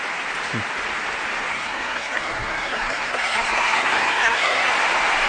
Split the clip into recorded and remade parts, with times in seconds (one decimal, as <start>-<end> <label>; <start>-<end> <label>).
0.0-1.5 recorded; 1.5-4.7 remade; 4.7-5.3 recorded